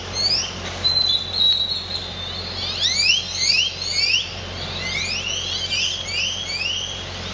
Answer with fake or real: real